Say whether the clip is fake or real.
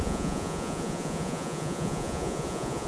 fake